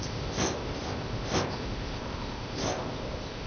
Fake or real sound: fake